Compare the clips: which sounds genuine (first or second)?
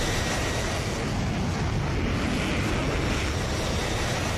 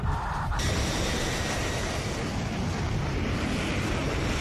first